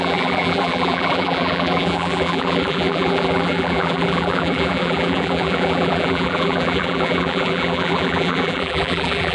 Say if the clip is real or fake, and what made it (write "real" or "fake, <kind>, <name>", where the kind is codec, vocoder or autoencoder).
fake, vocoder, BigVGAN v2